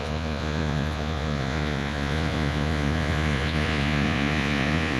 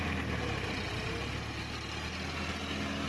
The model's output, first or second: first